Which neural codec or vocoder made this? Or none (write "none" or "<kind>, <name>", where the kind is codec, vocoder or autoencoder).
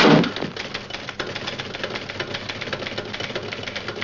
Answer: none